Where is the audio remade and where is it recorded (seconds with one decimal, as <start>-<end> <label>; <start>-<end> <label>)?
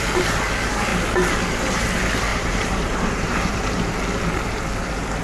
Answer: 0.0-2.3 recorded; 2.3-3.8 remade; 3.8-5.2 recorded